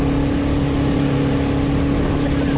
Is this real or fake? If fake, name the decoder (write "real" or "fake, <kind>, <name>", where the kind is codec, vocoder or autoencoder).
real